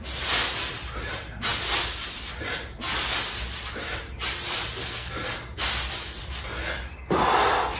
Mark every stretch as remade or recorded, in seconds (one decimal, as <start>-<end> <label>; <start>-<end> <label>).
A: 0.0-4.8 recorded; 4.8-5.3 remade; 5.3-7.8 recorded